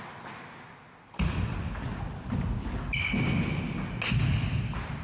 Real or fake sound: real